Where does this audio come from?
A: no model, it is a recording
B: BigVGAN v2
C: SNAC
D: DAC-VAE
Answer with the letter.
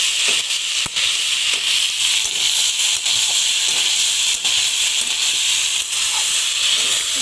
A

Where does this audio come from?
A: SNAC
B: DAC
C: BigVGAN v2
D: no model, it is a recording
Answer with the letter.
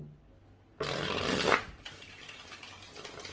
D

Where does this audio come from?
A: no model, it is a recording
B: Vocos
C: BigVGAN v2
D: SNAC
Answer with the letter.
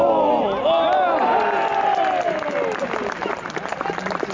A